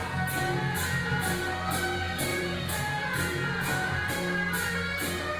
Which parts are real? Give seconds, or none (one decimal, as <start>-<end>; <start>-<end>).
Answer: 0.0-2.3; 4.1-5.4